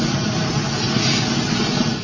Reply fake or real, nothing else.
real